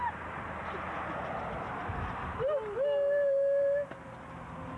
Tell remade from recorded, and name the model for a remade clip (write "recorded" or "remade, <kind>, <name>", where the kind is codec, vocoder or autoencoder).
recorded